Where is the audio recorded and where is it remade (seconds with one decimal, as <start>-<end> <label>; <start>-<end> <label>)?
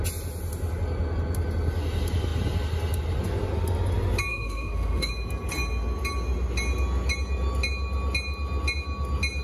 0.0-4.3 recorded; 4.3-5.1 remade; 5.1-9.4 recorded